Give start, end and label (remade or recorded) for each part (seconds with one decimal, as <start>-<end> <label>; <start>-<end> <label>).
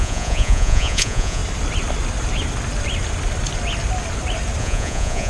0.0-1.4 remade; 1.4-4.6 recorded; 4.6-5.3 remade